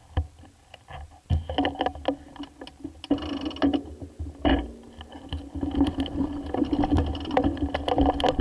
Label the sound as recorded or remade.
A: recorded